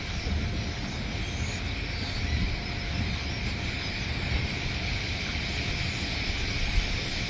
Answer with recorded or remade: recorded